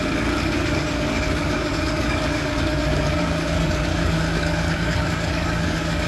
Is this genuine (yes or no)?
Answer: no